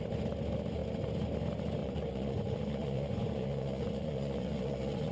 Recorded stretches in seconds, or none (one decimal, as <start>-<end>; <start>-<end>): 0.0-1.8